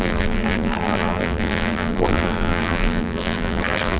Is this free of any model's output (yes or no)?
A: no